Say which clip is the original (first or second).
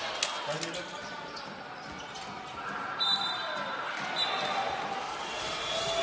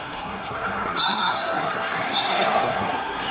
first